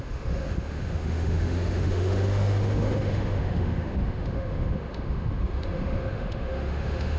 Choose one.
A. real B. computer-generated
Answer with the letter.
B